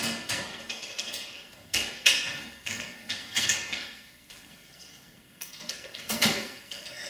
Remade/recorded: remade